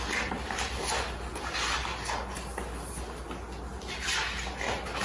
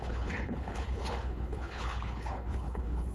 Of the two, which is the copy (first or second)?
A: second